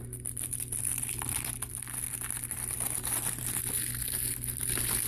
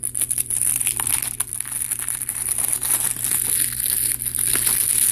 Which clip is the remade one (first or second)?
first